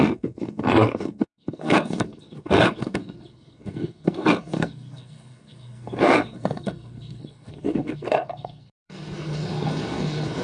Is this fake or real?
fake